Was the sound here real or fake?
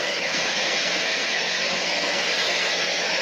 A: fake